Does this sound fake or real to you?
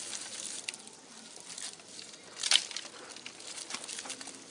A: real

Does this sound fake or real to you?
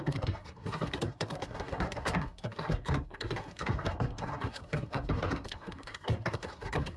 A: fake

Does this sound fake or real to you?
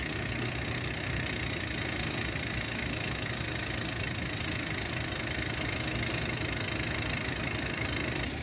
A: real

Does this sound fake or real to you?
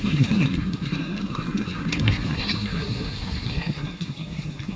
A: fake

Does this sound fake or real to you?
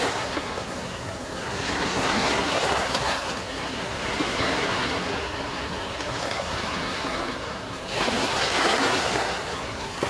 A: fake